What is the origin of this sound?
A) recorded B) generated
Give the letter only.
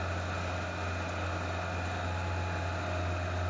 A